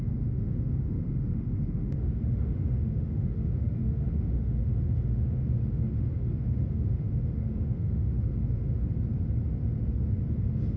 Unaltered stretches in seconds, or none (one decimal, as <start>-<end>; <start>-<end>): 8.8-10.3